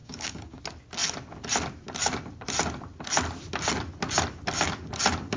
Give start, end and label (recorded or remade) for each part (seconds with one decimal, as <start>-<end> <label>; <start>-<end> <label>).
0.0-0.6 remade; 0.6-5.4 recorded